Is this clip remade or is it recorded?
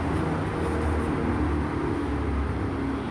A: recorded